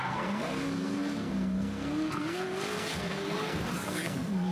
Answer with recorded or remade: remade